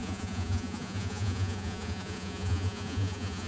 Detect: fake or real fake